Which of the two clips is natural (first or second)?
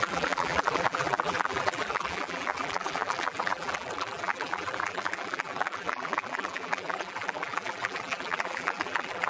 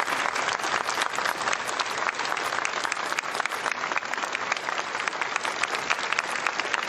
second